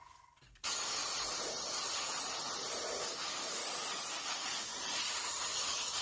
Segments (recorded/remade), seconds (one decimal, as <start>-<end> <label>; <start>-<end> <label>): 0.0-1.0 remade; 1.0-3.0 recorded; 3.0-3.6 remade; 3.6-4.2 recorded; 4.2-4.7 remade; 4.7-5.5 recorded; 5.5-6.0 remade